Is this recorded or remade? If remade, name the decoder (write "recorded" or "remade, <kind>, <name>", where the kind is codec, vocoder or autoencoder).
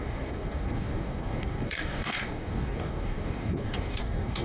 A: remade, codec, DAC